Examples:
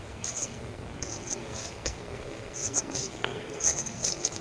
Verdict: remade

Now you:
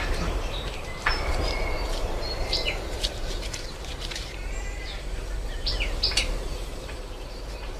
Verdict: remade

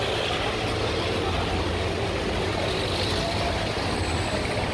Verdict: recorded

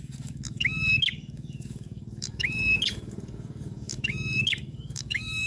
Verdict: remade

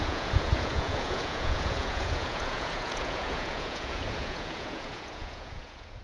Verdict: remade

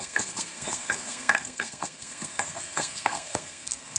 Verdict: remade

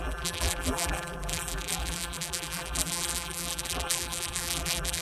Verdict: remade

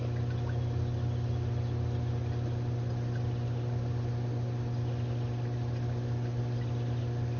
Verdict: recorded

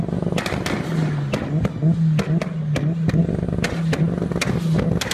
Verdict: recorded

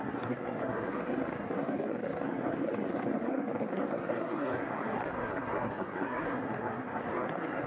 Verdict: remade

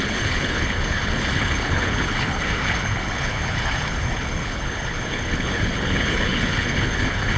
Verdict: remade